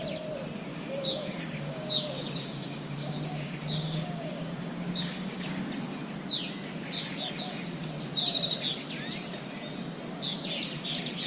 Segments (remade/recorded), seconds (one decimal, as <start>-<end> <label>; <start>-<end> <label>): 0.0-0.7 recorded; 0.7-5.7 remade; 5.7-11.3 recorded